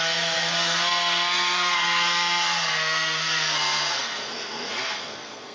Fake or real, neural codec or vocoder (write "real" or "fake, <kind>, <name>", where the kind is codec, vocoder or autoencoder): fake, codec, SNAC